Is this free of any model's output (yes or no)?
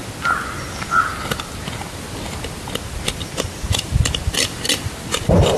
yes